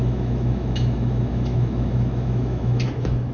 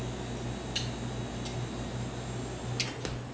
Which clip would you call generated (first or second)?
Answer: first